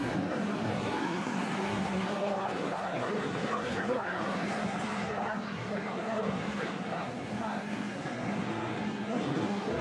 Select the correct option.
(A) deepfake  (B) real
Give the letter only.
A